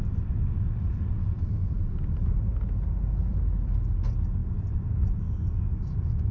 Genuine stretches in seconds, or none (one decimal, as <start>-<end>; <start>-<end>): 0.0-6.3